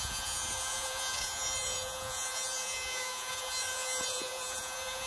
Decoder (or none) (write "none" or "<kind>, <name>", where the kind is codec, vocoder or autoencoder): vocoder, Vocos